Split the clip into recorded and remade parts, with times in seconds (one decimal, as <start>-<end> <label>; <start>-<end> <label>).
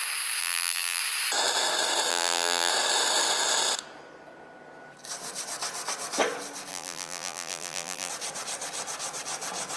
0.0-0.4 recorded; 0.4-1.0 remade; 1.0-2.1 recorded; 2.1-2.7 remade; 2.7-6.7 recorded; 6.7-8.1 remade; 8.1-9.8 recorded